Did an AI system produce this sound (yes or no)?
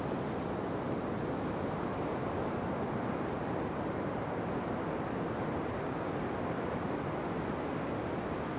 no